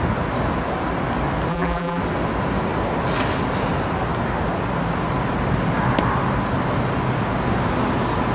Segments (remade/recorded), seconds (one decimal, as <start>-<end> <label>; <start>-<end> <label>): 0.0-1.5 recorded; 1.5-2.0 remade; 2.0-8.3 recorded